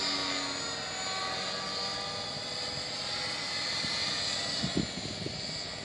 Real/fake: real